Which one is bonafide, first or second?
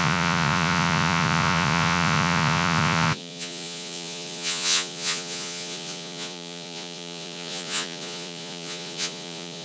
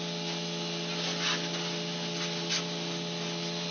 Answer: second